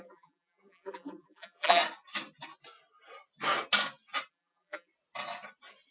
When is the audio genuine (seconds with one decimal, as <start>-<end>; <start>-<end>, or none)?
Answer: 1.8-4.3; 4.9-5.9